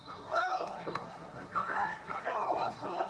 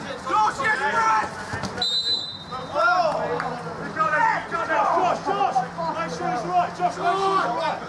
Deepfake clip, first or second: first